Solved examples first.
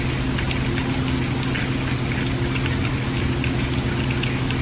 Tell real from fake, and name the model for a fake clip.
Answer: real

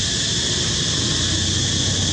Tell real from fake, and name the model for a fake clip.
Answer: real